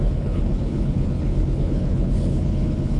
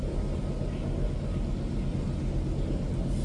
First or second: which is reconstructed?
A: first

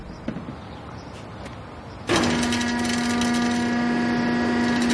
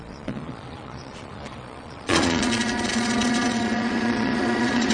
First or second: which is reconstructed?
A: second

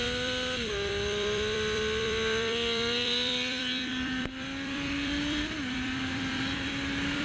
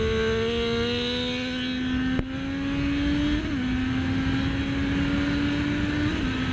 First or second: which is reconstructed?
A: first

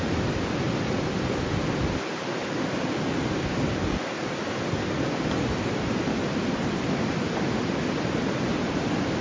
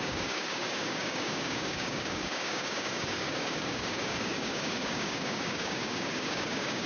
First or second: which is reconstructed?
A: second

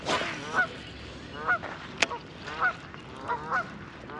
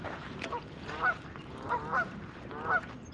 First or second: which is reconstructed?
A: second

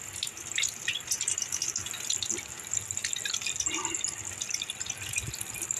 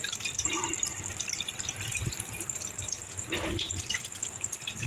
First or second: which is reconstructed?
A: second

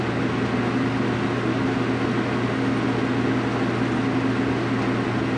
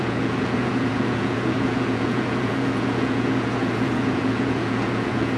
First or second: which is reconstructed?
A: second